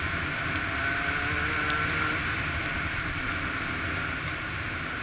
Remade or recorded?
recorded